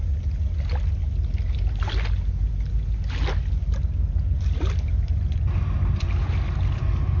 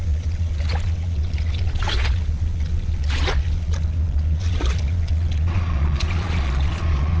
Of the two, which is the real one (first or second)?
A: first